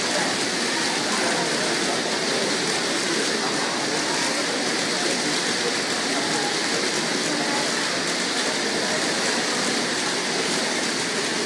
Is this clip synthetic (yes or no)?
no